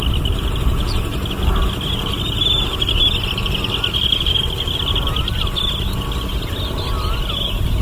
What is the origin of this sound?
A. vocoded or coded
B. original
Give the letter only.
B